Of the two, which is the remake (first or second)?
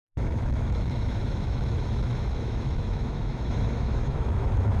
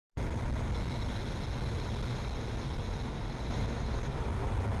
first